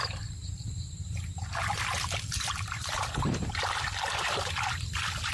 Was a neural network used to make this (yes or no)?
yes